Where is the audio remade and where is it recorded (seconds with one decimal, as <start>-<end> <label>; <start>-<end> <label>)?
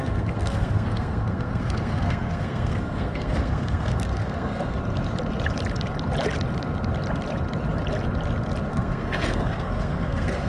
0.0-4.8 remade; 4.8-8.7 recorded; 8.7-10.5 remade